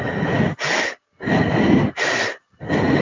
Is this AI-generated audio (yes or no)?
no